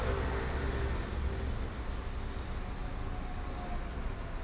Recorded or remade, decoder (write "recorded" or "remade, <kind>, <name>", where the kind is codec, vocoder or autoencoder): recorded